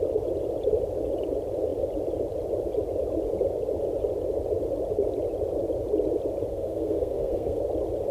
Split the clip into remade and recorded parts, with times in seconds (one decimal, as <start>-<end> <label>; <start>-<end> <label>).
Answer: 0.0-6.5 recorded; 6.5-7.6 remade; 7.6-8.1 recorded